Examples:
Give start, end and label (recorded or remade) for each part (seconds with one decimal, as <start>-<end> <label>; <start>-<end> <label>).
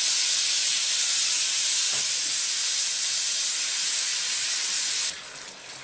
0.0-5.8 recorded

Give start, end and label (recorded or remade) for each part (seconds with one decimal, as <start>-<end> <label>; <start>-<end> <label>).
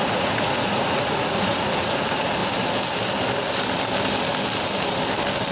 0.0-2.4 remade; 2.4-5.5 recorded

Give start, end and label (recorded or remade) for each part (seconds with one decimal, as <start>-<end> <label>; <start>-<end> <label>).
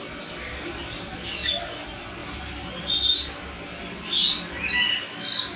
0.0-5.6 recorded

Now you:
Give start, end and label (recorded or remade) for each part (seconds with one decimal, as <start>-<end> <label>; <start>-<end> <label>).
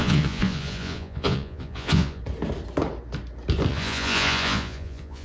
0.0-2.2 remade; 2.2-3.7 recorded; 3.7-5.2 remade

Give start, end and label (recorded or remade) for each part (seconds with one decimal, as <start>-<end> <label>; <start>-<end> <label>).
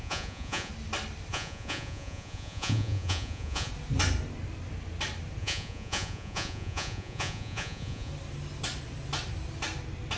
0.0-0.7 remade; 0.7-1.3 recorded; 1.3-3.7 remade; 3.7-5.4 recorded; 5.4-8.1 remade; 8.1-10.2 recorded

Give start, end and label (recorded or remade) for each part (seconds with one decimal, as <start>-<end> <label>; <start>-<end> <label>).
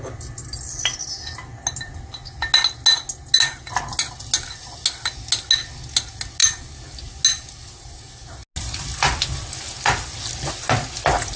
0.0-11.4 recorded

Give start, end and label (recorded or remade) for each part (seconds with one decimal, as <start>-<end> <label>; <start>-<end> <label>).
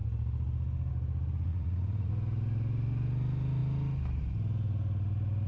0.0-1.5 recorded; 1.5-2.1 remade; 2.1-5.5 recorded